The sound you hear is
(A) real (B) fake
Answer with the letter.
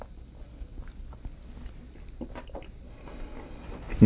A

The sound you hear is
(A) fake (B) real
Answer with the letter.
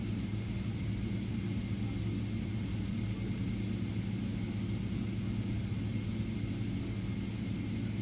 B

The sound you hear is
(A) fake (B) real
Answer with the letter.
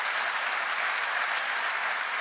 B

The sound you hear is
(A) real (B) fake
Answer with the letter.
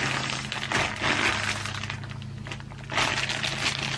A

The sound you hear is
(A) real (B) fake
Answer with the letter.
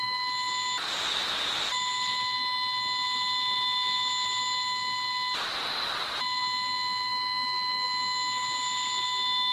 A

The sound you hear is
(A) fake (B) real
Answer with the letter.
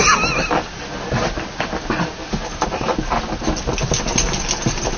B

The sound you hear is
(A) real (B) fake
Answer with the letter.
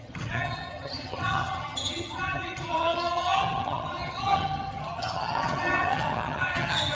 B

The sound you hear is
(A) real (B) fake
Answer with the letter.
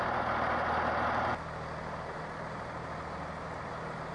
A